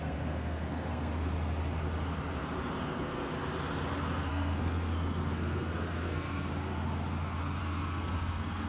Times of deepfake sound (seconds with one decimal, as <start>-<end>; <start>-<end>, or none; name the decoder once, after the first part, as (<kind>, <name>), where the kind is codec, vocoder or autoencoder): 0.0-1.1 (codec, SNAC); 2.8-3.3; 4.3-6.5; 7.6-8.7